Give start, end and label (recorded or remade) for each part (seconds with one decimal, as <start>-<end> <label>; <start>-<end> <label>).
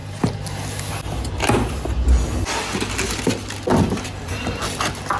0.0-5.2 recorded